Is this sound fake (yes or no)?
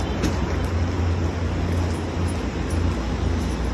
no